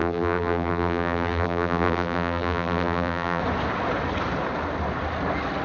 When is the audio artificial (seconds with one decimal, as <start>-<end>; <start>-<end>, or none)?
0.0-3.4